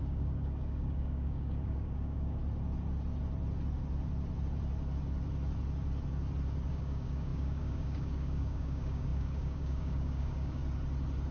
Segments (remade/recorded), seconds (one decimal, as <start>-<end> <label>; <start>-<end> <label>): 0.0-2.4 remade; 2.4-6.7 recorded; 6.7-10.6 remade; 10.6-11.3 recorded